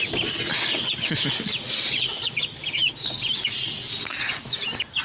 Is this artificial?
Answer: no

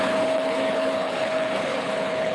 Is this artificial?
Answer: yes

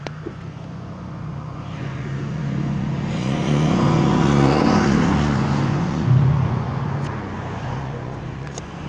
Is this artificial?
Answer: yes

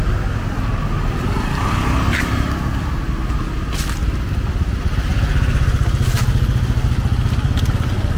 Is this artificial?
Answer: no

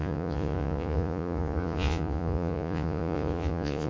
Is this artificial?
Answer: yes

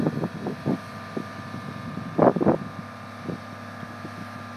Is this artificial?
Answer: no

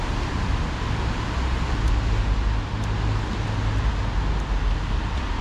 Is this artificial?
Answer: no